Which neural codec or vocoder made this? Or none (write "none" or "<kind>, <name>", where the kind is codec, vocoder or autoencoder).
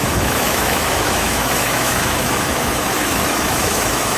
autoencoder, DAC-VAE